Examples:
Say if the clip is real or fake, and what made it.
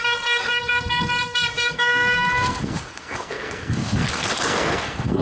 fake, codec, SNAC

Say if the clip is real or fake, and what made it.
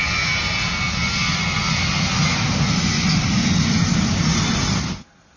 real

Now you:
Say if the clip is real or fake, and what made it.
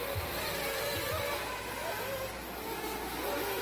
real